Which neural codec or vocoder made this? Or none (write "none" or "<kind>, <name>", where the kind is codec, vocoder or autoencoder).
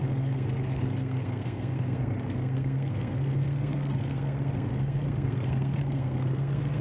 codec, SNAC